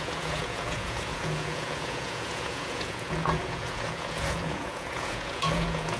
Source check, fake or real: fake